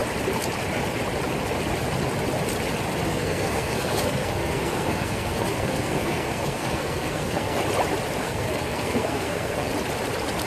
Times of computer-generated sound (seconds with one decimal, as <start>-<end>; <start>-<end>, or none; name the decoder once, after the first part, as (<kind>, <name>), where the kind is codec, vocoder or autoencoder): 3.1-7.6 (codec, SNAC); 8.2-9.7